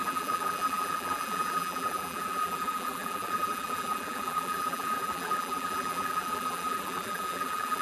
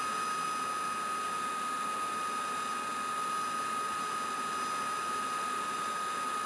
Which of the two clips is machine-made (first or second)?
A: first